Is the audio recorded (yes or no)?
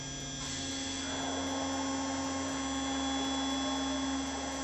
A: yes